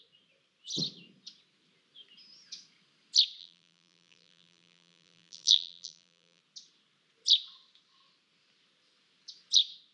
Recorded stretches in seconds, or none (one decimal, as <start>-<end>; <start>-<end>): 0.0-3.4; 6.4-9.9